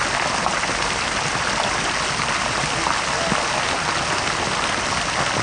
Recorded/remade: recorded